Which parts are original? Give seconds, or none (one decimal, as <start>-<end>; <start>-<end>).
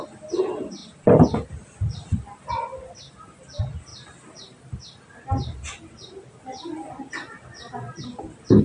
0.0-8.6